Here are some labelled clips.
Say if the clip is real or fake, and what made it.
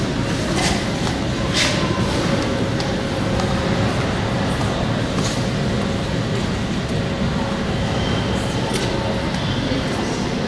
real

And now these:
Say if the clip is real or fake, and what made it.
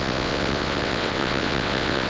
fake, vocoder, WaveNeXt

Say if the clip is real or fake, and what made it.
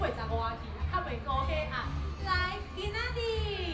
real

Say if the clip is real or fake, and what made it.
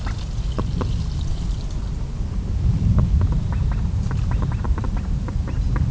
real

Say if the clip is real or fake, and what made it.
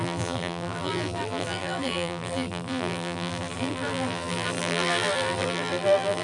fake, vocoder, BigVGAN v2